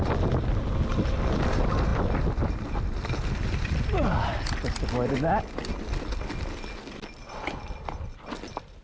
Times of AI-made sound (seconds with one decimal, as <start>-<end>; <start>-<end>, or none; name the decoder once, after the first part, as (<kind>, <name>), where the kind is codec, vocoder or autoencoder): none